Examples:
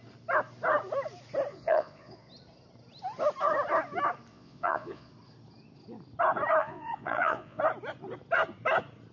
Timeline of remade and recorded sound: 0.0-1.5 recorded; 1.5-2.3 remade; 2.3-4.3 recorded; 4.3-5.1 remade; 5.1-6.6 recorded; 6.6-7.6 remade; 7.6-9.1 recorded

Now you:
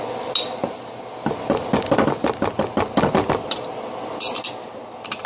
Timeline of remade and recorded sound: 0.0-5.3 recorded

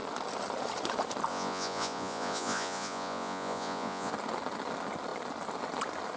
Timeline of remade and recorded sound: 0.0-1.3 recorded; 1.3-4.1 remade; 4.1-6.2 recorded